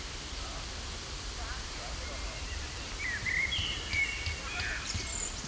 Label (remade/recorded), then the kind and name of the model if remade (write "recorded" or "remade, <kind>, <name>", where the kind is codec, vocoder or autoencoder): remade, vocoder, BigVGAN v2